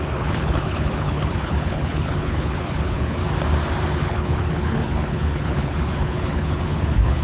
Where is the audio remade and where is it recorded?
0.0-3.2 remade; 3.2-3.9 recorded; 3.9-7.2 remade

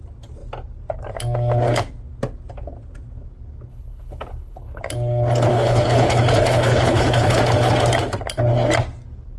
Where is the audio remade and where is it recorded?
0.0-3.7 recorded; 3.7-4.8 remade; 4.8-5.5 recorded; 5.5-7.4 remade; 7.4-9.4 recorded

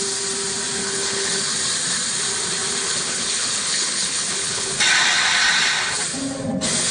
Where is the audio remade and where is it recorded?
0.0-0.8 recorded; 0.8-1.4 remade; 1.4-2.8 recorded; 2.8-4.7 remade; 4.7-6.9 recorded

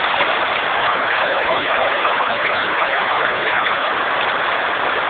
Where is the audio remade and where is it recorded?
0.0-0.8 recorded; 0.8-3.9 remade; 3.9-5.1 recorded

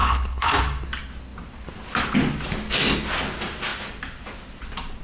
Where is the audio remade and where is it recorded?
0.0-0.6 remade; 0.6-5.0 recorded